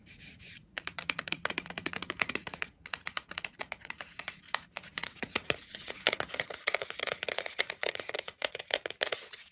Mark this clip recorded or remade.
remade